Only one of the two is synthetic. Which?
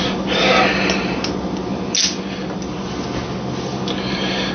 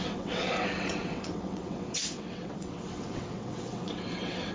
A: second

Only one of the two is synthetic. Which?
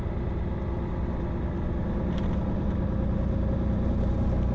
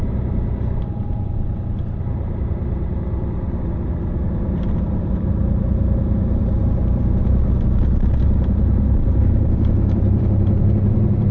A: second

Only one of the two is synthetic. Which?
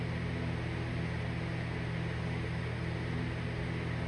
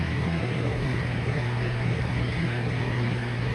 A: second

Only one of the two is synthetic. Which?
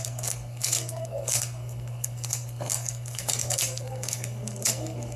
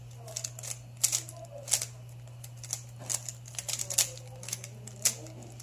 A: first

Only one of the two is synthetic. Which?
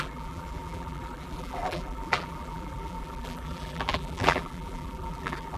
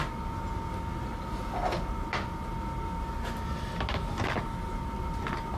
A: first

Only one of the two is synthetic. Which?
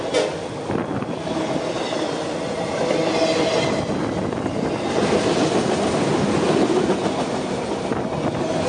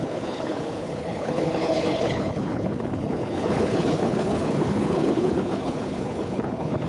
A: second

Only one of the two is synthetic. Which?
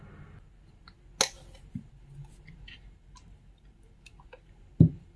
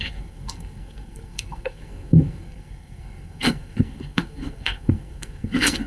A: second